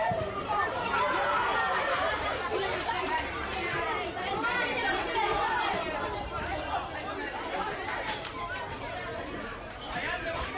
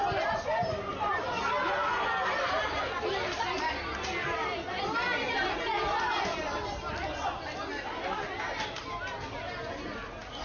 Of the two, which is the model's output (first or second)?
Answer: first